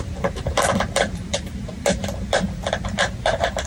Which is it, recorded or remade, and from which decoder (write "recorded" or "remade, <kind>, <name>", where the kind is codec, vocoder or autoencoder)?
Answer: remade, vocoder, BigVGAN v2